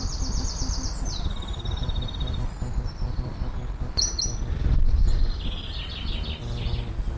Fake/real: real